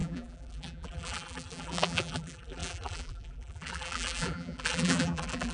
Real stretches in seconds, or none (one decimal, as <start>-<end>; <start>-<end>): none